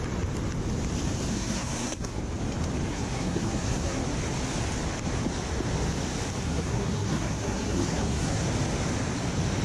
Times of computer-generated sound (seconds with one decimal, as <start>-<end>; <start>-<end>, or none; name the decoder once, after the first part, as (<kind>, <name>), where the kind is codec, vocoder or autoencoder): 1.3-2.2 (codec, SNAC); 2.9-4.0; 6.4-8.4

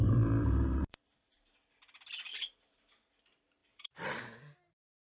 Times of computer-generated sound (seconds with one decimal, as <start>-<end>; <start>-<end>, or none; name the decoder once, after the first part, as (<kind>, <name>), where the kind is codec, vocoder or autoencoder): 0.0-1.5 (vocoder, BigVGAN v2); 3.6-4.2

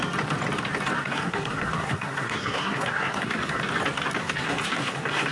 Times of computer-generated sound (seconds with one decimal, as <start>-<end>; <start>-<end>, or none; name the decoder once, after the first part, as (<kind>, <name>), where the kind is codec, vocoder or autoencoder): 1.0-3.6 (codec, SNAC); 4.2-5.3

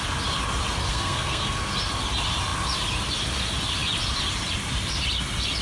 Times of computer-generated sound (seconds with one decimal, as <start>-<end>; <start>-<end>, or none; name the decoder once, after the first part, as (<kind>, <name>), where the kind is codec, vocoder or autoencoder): 0.9-1.7 (codec, SNAC)